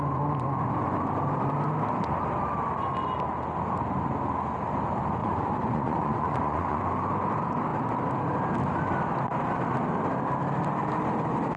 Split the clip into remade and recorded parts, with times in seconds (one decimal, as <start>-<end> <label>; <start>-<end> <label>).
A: 0.0-5.2 recorded; 5.2-6.8 remade; 6.8-11.6 recorded